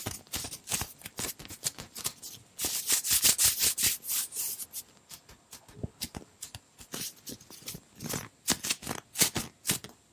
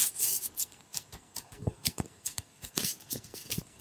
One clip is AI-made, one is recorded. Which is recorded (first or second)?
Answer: first